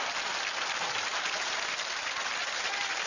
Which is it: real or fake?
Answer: real